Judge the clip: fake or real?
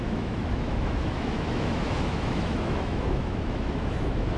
fake